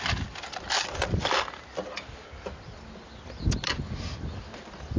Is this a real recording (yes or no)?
yes